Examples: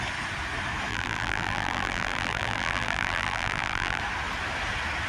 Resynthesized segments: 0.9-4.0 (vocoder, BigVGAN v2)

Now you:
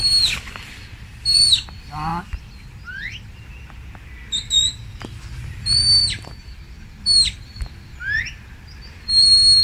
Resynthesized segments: 2.1-3.5 (vocoder, BigVGAN v2); 6.0-7.0

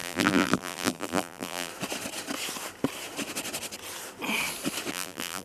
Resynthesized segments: 0.0-1.7 (vocoder, BigVGAN v2); 4.9-5.4

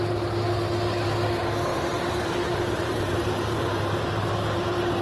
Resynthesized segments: 1.7-4.3 (vocoder, BigVGAN v2)

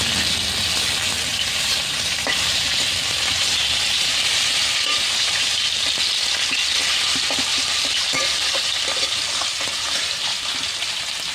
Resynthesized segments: 1.3-5.6 (vocoder, BigVGAN v2); 7.5-8.8; 9.5-10.5

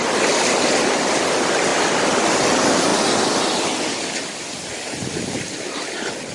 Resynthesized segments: none